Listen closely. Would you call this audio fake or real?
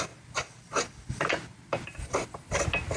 real